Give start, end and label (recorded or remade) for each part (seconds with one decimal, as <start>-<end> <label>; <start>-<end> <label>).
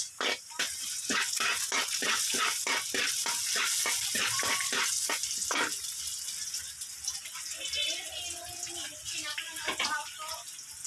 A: 0.0-2.0 recorded; 2.0-6.1 remade; 6.1-9.0 recorded; 9.0-10.3 remade; 10.3-10.9 recorded